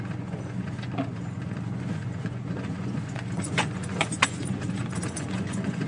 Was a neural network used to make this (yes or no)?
yes